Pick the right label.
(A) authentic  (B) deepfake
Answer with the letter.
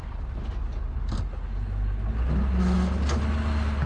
A